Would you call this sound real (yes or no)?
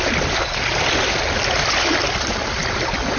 yes